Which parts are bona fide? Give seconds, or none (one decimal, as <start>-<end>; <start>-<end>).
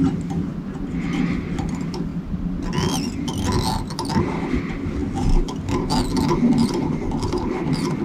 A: 0.5-1.7; 2.1-4.6; 5.0-6.5